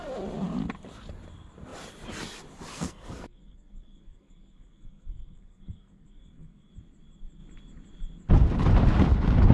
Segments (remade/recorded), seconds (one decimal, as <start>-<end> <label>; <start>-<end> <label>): 0.0-2.7 recorded; 2.7-6.7 remade; 6.7-9.5 recorded